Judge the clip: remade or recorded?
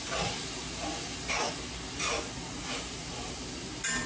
recorded